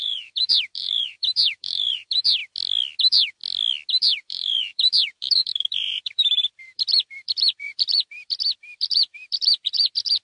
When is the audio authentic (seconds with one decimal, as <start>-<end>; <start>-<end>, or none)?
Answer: 2.4-3.0; 3.4-3.9